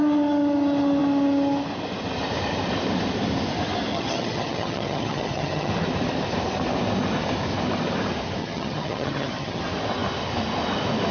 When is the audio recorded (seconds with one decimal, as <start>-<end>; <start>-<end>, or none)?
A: 0.0-3.9; 5.7-8.4; 9.6-11.1